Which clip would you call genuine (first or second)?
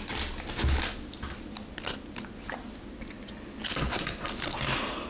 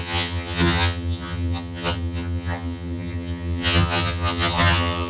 first